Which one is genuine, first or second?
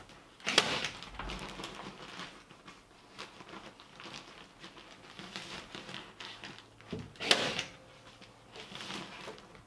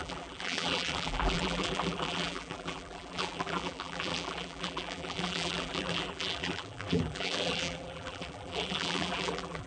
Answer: first